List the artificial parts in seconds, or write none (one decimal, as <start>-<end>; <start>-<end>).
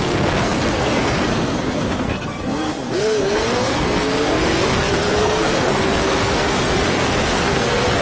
0.0-8.0